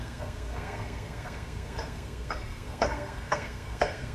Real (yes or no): no